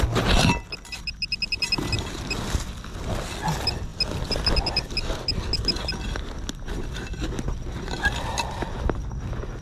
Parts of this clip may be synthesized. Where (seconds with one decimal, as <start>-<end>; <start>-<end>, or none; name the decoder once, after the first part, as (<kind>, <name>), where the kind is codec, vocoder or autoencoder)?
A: none